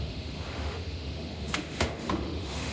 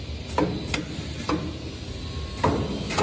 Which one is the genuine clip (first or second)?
second